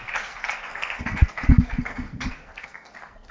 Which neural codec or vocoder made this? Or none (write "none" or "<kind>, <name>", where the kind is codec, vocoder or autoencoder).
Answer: codec, SNAC